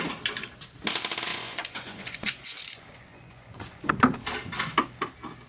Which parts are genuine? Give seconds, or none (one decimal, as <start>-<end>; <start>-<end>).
0.0-1.3; 3.9-5.5